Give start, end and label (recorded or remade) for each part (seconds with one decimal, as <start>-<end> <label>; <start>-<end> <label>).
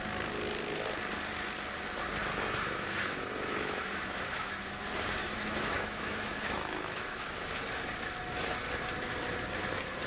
0.0-2.2 recorded; 2.2-4.6 remade; 4.6-5.2 recorded; 5.2-7.5 remade; 7.5-10.1 recorded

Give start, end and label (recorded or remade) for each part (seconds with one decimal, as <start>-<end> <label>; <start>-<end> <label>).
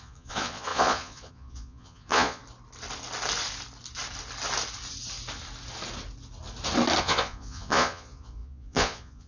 0.0-2.4 remade; 2.4-7.0 recorded; 7.0-9.3 remade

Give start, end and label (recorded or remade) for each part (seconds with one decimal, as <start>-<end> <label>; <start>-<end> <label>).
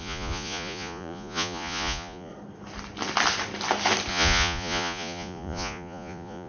0.0-2.3 remade; 2.3-4.1 recorded; 4.1-6.5 remade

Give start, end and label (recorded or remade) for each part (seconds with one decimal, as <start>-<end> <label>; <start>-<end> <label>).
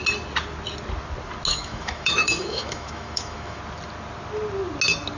0.0-1.5 recorded; 1.5-3.6 remade; 3.6-5.2 recorded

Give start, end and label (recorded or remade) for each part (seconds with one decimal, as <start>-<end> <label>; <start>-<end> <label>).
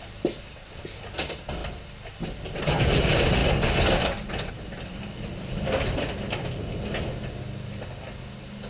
0.0-0.8 remade; 0.8-8.7 recorded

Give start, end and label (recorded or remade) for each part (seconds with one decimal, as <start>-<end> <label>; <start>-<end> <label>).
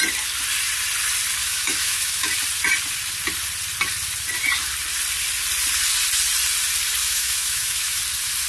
0.0-1.4 recorded; 1.4-2.3 remade; 2.3-7.0 recorded; 7.0-8.0 remade; 8.0-8.5 recorded